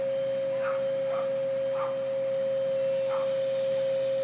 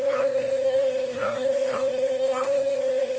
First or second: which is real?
first